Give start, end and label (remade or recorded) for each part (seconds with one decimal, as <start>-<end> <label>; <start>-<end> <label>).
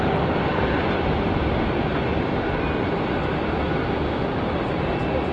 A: 0.0-5.3 recorded